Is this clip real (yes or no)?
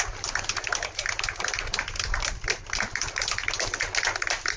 yes